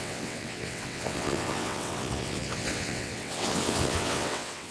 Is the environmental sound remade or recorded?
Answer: remade